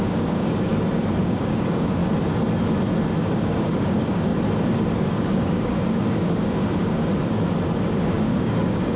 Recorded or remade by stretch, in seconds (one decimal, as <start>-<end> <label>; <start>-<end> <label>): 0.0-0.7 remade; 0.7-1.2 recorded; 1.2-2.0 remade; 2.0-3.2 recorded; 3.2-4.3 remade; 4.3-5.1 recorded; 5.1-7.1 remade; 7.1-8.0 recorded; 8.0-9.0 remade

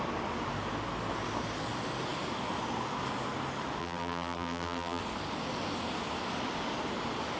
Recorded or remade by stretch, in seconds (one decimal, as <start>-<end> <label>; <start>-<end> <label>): 0.0-3.8 recorded; 3.8-5.0 remade; 5.0-7.4 recorded

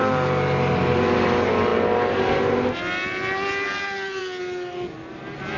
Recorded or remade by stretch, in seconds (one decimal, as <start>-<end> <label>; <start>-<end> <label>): 0.0-5.6 recorded